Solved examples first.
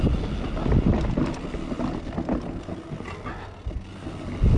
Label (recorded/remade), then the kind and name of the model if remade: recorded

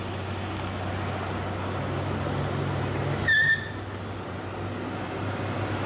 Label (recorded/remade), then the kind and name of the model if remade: recorded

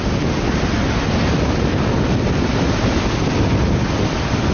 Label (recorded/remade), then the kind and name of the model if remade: recorded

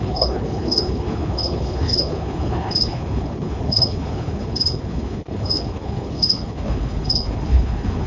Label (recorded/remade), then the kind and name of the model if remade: remade, codec, HILCodec